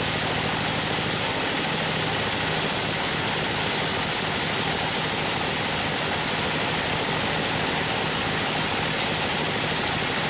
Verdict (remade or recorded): recorded